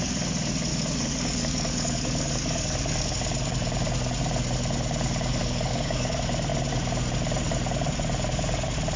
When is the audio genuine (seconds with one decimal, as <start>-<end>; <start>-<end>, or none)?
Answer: 0.0-0.7; 3.1-5.4; 6.1-9.0